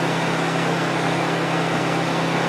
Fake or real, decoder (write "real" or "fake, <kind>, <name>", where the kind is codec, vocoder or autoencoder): fake, codec, SNAC